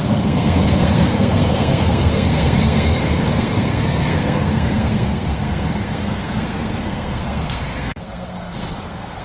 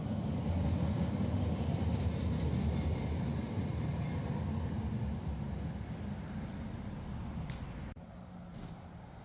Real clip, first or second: second